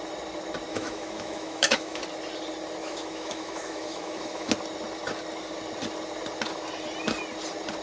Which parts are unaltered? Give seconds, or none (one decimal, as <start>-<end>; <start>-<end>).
0.0-0.7; 2.0-2.8; 4.5-7.8